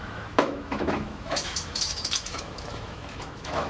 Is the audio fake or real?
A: fake